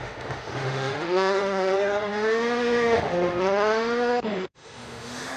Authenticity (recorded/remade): remade